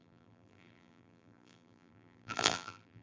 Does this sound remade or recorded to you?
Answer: remade